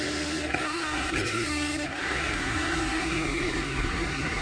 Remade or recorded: remade